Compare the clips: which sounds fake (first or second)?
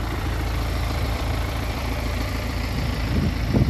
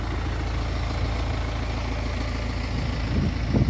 first